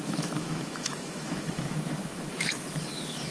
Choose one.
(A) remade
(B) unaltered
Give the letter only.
A